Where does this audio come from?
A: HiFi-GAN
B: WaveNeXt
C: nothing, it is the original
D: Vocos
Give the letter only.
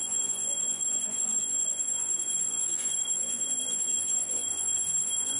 D